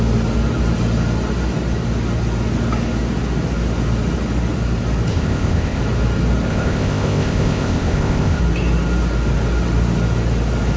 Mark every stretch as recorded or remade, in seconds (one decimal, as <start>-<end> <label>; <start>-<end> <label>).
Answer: 0.0-5.1 recorded; 5.1-5.8 remade; 5.8-6.5 recorded; 6.5-8.4 remade; 8.4-10.8 recorded